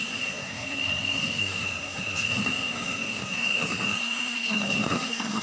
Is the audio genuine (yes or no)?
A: no